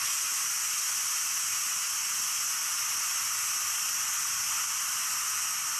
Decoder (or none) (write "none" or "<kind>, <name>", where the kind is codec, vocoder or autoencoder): none